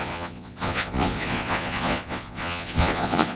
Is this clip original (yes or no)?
no